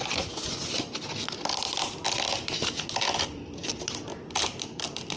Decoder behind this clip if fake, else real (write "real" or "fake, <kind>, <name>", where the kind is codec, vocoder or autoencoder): real